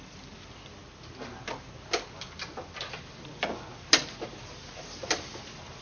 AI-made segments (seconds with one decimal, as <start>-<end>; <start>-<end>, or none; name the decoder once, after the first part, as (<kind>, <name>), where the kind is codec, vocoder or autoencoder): none